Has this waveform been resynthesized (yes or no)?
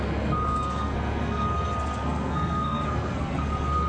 yes